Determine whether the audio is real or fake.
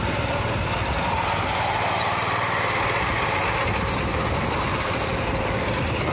real